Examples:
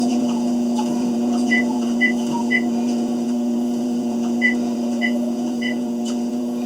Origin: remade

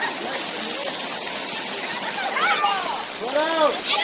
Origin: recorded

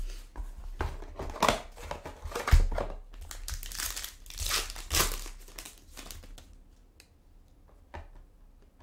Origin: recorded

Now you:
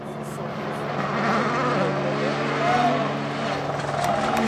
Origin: recorded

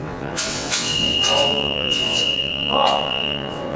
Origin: remade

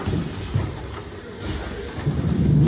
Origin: recorded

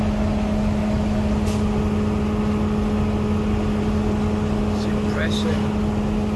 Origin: recorded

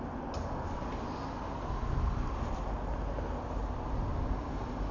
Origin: recorded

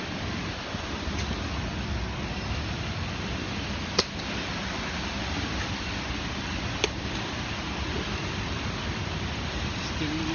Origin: recorded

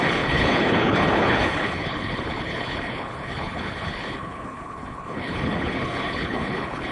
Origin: remade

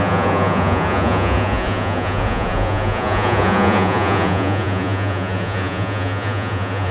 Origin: remade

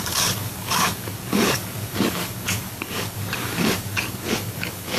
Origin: remade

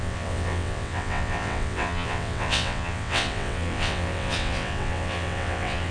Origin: remade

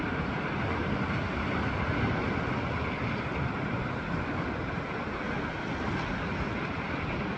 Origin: recorded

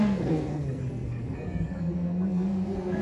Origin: remade